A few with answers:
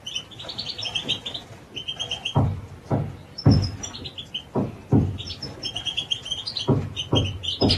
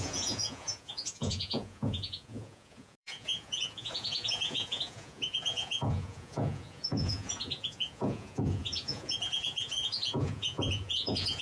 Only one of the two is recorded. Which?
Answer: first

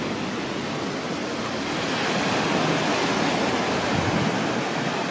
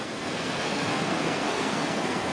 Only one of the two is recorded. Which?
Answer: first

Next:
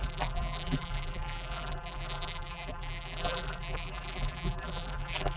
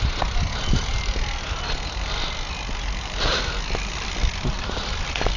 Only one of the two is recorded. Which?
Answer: second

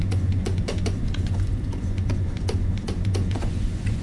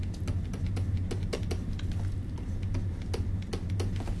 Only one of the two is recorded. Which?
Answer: second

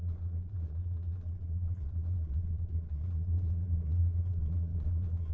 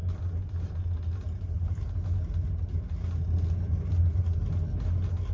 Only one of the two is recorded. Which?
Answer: second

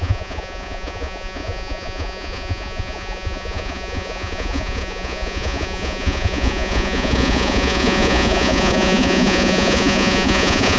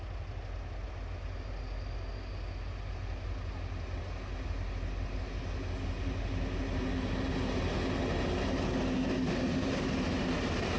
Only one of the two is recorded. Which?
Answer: second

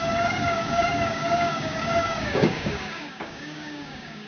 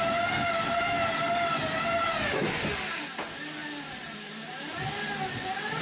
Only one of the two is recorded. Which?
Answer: second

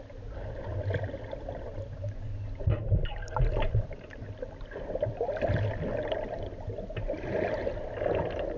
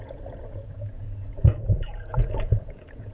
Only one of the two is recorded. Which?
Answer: first